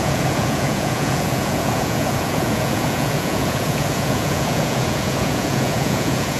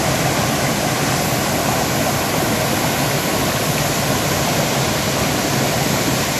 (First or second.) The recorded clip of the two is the second